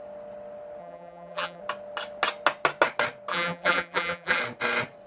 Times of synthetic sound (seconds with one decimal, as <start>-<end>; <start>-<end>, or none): 0.8-1.6; 3.3-4.4

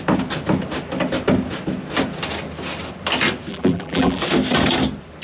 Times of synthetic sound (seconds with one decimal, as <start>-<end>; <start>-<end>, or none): 3.5-4.2

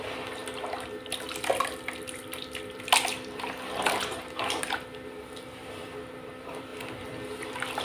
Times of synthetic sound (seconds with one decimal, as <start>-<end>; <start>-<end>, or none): 0.0-0.4; 1.0-3.1; 4.0-7.8

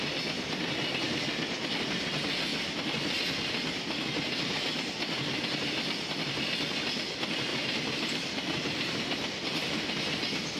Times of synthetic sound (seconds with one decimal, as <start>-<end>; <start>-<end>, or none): 7.5-8.9